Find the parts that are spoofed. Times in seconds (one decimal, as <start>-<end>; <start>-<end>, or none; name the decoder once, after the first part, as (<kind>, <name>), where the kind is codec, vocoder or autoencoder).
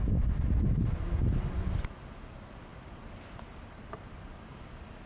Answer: none